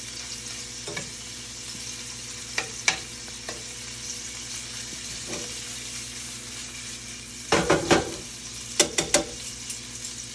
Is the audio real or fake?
real